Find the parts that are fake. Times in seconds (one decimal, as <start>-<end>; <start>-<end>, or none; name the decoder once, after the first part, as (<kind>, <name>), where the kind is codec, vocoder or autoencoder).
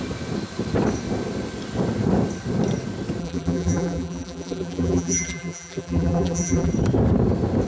3.2-6.7 (vocoder, BigVGAN v2)